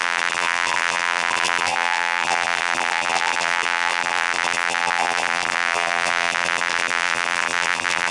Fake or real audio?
fake